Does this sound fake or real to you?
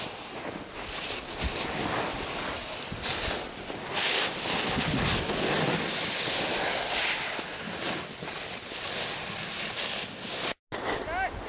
real